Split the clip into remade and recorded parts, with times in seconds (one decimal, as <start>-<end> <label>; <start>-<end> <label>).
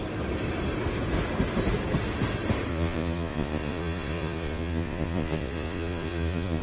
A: 0.0-2.7 recorded; 2.7-6.6 remade